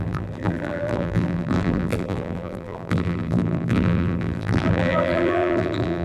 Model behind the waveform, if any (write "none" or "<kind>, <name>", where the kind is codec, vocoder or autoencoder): vocoder, BigVGAN v2